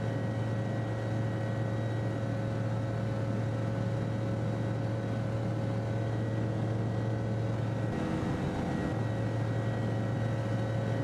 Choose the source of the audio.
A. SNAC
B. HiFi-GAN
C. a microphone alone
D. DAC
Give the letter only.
C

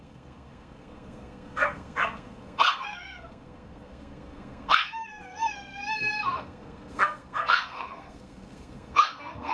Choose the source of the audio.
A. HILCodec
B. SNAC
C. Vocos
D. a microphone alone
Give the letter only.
B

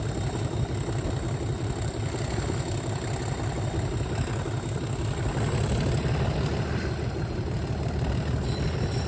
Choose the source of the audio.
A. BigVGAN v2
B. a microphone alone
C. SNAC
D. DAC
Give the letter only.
B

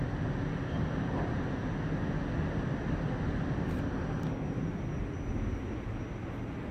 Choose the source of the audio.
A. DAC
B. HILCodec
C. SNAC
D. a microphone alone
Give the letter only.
D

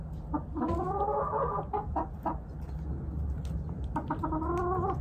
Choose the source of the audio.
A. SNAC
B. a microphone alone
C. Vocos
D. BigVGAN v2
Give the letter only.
B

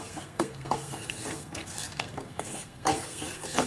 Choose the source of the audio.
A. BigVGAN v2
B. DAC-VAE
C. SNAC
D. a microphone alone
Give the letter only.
C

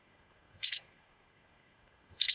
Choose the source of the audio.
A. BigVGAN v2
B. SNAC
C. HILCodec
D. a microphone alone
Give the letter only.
B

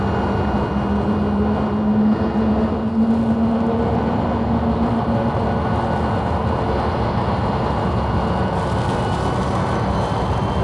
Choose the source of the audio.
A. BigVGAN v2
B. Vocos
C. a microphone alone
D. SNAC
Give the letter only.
C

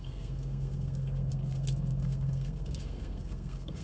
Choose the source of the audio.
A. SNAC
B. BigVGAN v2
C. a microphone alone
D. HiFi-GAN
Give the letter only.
A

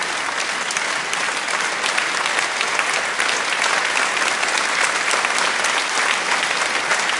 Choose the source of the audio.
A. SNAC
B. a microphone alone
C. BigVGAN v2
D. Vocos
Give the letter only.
B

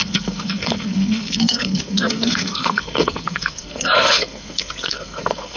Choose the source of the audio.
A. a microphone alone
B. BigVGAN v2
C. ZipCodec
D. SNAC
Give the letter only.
D